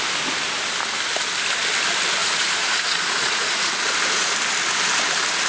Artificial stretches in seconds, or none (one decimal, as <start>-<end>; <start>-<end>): 2.2-3.7